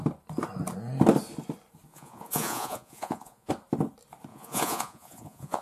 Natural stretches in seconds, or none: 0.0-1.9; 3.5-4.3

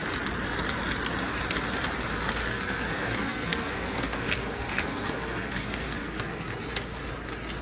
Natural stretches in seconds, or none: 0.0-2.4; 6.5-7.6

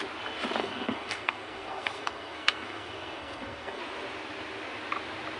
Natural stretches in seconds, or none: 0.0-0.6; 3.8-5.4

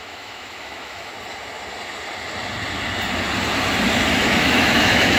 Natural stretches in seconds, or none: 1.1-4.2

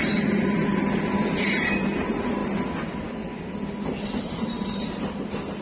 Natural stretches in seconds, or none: 0.7-1.4; 2.4-4.2

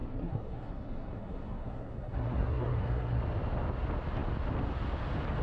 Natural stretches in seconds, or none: 3.2-5.4

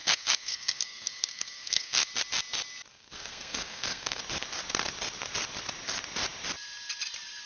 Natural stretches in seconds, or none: 2.1-2.9; 4.2-7.5

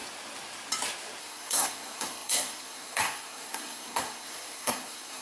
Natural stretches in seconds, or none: 0.0-1.2